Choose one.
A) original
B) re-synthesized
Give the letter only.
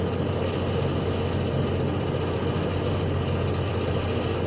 A